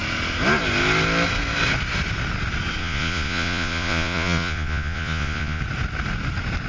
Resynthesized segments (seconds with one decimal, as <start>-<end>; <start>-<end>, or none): 2.8-5.6